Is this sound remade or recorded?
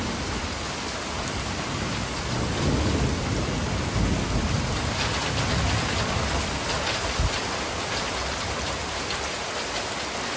recorded